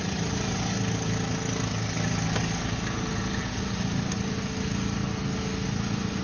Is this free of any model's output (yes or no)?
yes